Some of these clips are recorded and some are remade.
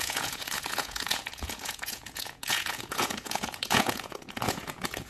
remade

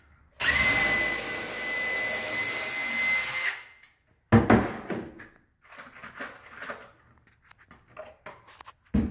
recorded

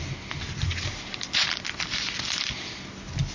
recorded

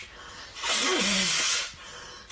recorded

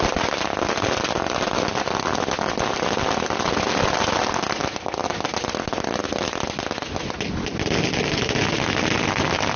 recorded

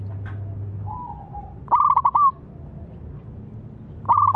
recorded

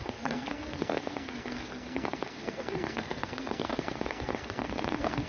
remade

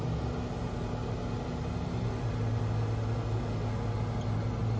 recorded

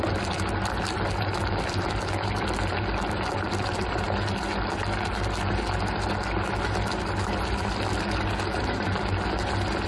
recorded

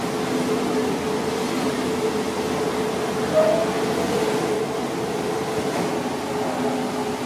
recorded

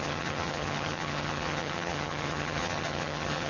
remade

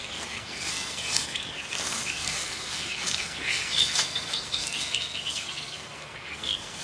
remade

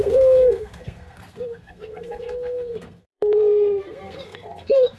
remade